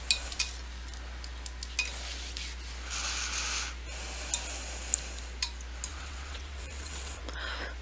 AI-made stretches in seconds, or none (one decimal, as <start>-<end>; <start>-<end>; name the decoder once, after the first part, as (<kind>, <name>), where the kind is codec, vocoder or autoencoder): 5.9-7.2 (vocoder, WaveNeXt)